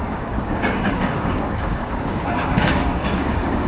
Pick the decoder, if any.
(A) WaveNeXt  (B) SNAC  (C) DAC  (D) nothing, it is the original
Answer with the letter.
C